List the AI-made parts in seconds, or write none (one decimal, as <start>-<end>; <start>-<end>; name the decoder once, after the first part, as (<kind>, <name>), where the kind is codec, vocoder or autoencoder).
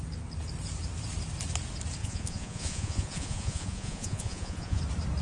2.0-4.8 (vocoder, Vocos)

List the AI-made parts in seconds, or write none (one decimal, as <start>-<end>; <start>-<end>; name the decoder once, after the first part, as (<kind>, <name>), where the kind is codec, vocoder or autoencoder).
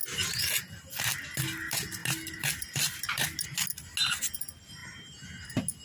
none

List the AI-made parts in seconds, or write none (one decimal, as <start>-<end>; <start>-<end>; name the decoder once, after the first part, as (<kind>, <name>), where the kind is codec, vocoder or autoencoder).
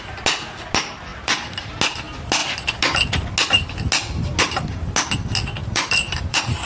1.1-1.6 (vocoder, BigVGAN v2); 5.6-6.7